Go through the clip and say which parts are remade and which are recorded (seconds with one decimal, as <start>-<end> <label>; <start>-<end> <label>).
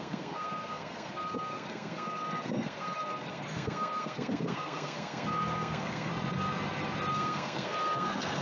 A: 0.0-6.1 remade; 6.1-7.1 recorded; 7.1-8.4 remade